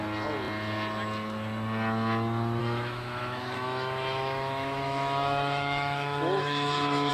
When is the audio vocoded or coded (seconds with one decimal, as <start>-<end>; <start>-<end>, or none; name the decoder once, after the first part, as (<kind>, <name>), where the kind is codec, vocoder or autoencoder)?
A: 2.6-7.1 (autoencoder, DAC-VAE)